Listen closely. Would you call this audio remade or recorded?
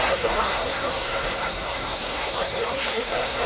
remade